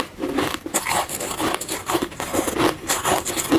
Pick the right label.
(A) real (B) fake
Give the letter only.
A